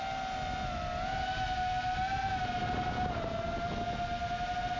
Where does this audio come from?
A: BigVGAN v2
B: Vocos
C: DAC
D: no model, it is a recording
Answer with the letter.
D